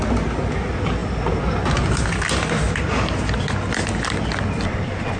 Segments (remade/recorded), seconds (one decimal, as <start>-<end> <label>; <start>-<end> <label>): 0.0-5.2 recorded

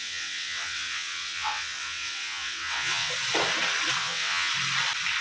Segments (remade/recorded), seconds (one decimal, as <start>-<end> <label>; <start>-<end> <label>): 0.0-3.1 remade; 3.1-4.0 recorded; 4.0-4.5 remade; 4.5-5.2 recorded

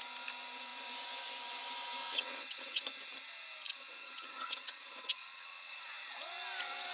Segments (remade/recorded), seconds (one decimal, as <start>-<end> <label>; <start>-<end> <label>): 0.0-2.0 recorded; 2.0-2.8 remade; 2.8-3.7 recorded; 3.7-5.7 remade; 5.7-6.9 recorded

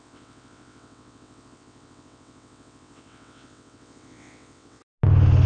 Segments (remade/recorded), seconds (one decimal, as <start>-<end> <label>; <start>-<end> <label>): 0.0-4.8 remade; 4.8-5.5 recorded

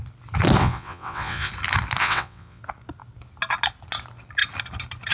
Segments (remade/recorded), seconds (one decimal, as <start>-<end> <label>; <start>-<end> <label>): 0.0-0.6 recorded; 0.6-1.5 remade; 1.5-2.0 recorded; 2.0-2.6 remade; 2.6-5.1 recorded